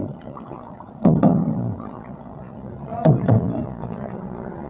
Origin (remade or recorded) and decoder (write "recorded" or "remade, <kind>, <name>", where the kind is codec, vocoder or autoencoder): remade, vocoder, Vocos